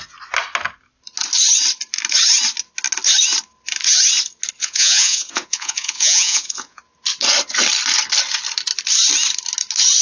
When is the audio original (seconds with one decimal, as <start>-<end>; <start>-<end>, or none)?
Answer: 0.0-4.6; 6.8-10.0